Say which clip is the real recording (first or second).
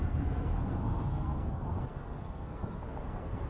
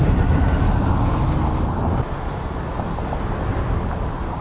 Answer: second